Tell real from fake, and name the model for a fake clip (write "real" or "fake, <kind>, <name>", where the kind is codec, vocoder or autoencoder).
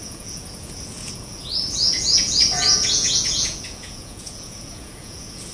fake, vocoder, Vocos